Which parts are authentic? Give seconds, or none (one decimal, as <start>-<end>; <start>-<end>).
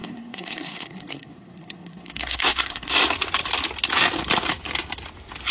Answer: 3.0-5.5